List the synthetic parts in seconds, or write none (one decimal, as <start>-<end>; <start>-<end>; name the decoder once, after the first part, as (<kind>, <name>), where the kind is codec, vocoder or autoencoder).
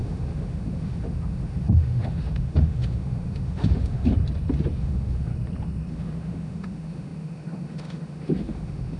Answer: 0.0-4.1 (autoencoder, DAC-VAE); 4.8-5.3; 5.9-9.0